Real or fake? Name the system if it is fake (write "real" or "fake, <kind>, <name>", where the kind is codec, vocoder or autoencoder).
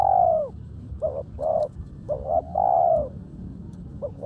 fake, codec, DAC